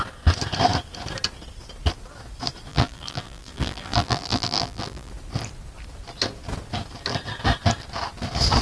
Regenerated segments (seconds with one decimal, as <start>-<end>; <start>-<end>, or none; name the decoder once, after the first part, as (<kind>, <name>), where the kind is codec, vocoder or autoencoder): 2.7-5.1 (vocoder, BigVGAN v2)

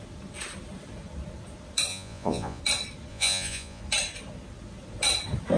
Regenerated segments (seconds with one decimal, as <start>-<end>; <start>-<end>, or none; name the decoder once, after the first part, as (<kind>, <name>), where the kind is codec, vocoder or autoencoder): 1.9-2.6 (vocoder, Vocos); 3.1-3.8

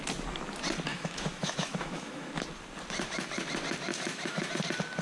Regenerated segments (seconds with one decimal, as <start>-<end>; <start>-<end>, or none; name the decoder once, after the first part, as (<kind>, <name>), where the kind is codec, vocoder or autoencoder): 0.9-2.3 (autoencoder, DAC-VAE); 3.9-4.5

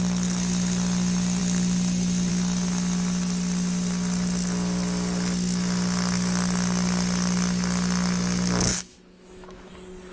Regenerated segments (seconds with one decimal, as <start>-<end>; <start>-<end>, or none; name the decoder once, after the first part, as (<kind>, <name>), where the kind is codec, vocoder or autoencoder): 8.7-9.7 (autoencoder, DAC-VAE)

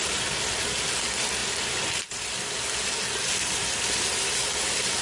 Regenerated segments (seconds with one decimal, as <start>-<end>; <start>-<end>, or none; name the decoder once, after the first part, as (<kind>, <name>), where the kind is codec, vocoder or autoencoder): none

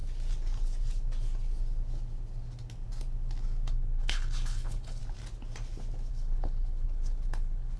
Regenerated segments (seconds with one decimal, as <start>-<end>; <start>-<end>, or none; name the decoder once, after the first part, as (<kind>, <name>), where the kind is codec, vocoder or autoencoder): 3.7-5.0 (codec, HILCodec); 6.1-7.8

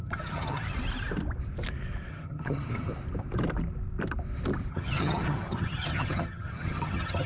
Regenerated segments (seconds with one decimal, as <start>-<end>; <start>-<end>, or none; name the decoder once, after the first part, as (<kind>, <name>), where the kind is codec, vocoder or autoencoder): 0.0-0.7 (vocoder, HiFi-GAN); 2.1-2.9; 4.7-7.3

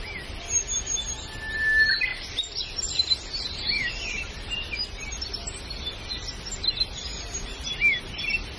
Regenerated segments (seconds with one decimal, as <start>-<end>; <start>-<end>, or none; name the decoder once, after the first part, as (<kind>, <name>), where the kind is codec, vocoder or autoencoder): 2.1-4.2 (vocoder, BigVGAN v2); 7.1-7.7